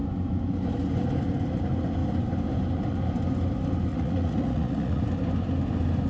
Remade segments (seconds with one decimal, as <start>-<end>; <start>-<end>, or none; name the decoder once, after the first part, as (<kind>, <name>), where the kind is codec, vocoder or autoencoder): 3.9-5.0 (vocoder, Vocos)